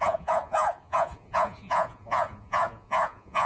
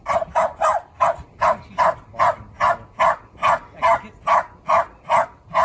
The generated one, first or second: first